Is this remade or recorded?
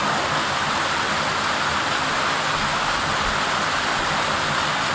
recorded